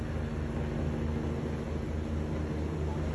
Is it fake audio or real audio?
real